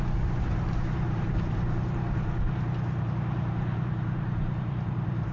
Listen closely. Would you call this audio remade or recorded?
remade